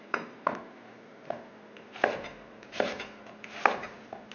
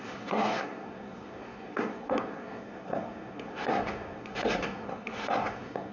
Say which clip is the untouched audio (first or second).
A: first